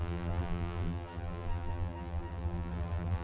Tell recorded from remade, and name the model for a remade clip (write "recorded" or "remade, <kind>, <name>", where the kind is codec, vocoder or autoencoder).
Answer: remade, vocoder, BigVGAN v2